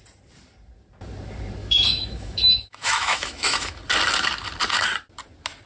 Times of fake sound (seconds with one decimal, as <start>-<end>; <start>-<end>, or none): 1.6-3.8

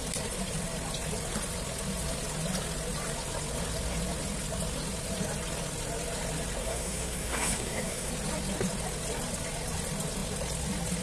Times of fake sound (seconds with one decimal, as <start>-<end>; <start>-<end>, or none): 6.6-8.1

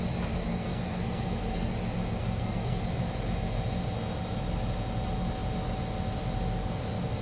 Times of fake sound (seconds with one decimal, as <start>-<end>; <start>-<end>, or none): 0.5-1.7; 2.2-2.8

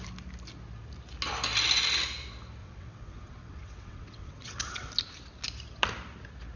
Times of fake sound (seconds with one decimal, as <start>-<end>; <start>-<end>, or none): 2.6-4.9

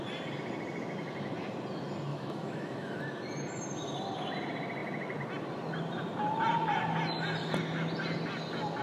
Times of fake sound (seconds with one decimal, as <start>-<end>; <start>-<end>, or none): 2.1-3.0

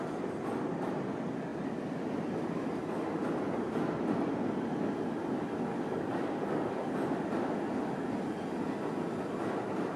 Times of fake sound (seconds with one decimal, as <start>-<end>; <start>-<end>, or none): 5.7-6.9

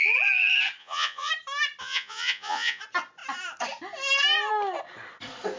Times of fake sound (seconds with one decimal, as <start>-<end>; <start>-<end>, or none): 0.8-1.3; 1.8-2.8

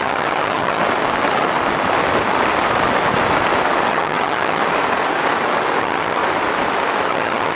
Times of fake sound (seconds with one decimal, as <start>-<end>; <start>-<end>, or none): 0.0-0.8; 3.9-4.6; 5.8-6.2; 7.1-7.6